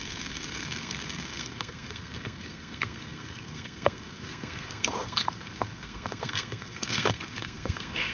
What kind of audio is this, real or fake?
fake